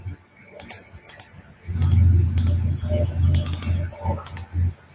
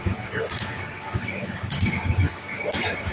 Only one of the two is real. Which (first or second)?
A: first